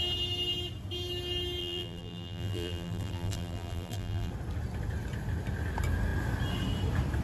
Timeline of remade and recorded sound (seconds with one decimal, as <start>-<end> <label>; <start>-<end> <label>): 0.0-1.6 recorded; 1.6-4.3 remade; 4.3-7.2 recorded